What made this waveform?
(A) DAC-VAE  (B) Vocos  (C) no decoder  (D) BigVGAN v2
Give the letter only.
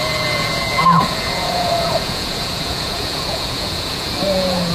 B